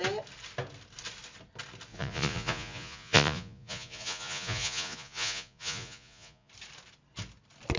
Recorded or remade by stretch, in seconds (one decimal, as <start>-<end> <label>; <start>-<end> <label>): 0.0-1.9 recorded; 1.9-6.5 remade; 6.5-7.8 recorded